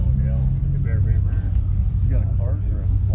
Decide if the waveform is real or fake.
real